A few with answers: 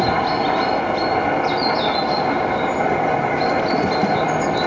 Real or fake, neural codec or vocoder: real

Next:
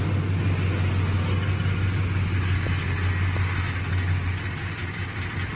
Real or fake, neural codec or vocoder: real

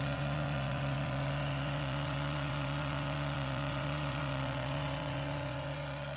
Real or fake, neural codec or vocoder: fake, vocoder, WaveNeXt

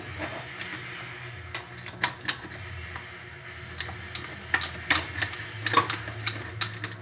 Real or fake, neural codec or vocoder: real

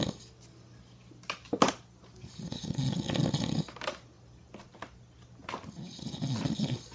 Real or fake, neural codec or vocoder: real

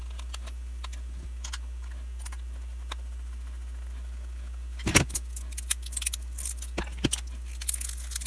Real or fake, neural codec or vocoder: real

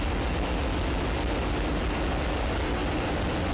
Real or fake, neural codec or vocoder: real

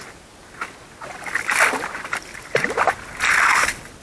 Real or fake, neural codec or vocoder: real